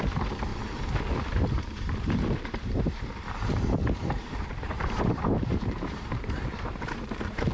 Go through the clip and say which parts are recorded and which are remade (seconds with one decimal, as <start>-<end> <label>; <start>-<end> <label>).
0.0-0.5 remade; 0.5-1.3 recorded; 1.3-7.5 remade